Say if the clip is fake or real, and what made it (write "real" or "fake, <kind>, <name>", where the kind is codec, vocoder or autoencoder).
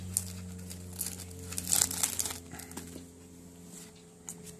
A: real